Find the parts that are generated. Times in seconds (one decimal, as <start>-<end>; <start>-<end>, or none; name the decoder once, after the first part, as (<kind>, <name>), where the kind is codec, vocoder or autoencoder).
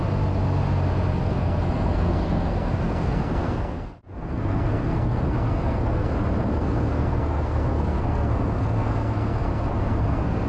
1.1-6.1 (codec, SNAC); 6.5-10.5